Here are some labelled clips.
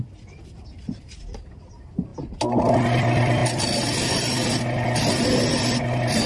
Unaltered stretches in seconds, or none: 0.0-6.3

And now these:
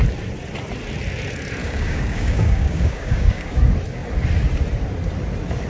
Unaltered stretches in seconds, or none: 0.0-1.6; 3.6-5.7

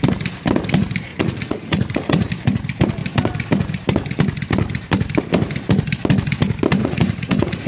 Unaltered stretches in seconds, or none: 0.0-1.1; 2.3-6.8

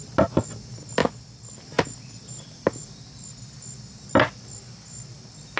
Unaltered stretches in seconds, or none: 0.0-5.6

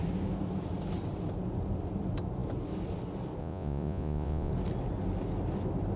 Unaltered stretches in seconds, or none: 0.0-3.4; 4.5-6.0